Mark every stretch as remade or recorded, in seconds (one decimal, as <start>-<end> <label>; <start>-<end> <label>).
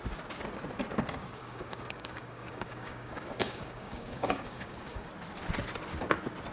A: 0.0-1.2 recorded; 1.2-5.1 remade; 5.1-6.5 recorded